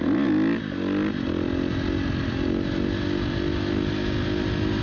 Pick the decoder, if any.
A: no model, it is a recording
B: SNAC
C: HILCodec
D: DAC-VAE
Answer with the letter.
A